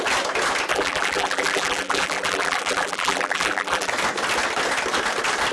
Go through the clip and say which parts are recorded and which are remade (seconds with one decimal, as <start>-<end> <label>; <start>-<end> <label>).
0.0-0.7 recorded; 0.7-3.9 remade; 3.9-5.5 recorded